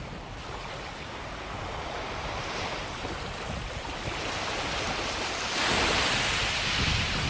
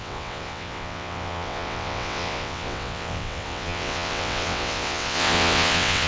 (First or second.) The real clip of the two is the first